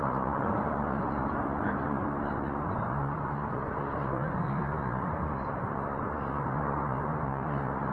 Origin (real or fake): fake